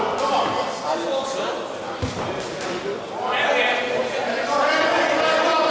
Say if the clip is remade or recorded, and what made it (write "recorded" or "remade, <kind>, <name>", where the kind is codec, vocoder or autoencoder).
recorded